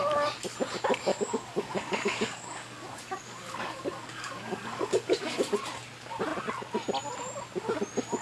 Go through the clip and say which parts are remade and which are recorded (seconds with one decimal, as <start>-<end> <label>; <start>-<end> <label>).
0.0-1.1 recorded; 1.1-5.6 remade; 5.6-8.2 recorded